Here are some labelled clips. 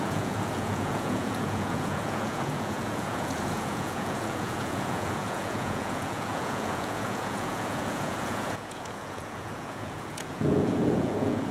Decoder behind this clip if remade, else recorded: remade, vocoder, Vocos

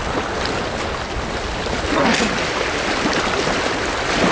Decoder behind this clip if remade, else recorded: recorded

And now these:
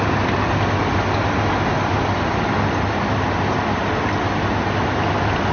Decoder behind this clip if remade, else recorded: recorded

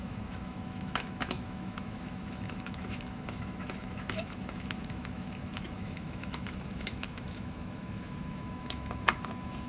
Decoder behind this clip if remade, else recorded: remade, autoencoder, DAC-VAE